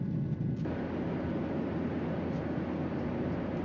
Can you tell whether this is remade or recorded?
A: recorded